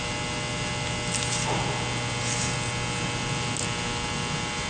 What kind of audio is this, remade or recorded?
recorded